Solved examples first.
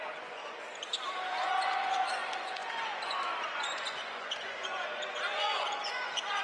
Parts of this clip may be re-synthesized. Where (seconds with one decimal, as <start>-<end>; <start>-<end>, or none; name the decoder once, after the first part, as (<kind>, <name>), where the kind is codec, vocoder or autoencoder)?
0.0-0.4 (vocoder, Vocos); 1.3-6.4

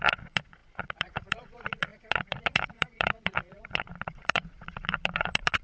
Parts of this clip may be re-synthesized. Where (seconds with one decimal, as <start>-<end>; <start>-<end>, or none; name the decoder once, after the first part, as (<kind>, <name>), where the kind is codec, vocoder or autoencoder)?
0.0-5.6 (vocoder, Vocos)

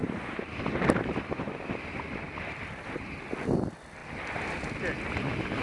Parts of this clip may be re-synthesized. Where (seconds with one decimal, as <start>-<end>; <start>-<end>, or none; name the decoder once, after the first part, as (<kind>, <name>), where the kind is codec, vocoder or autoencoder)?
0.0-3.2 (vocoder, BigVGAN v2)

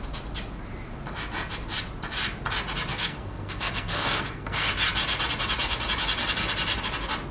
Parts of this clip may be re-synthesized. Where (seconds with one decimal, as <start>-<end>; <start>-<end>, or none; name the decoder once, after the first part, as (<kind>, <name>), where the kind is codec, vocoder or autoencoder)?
2.9-4.7 (codec, SNAC)

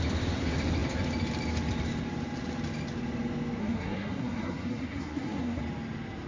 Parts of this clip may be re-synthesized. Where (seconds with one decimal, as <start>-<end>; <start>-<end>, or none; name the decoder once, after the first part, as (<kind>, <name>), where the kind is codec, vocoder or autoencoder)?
3.6-5.6 (codec, SNAC)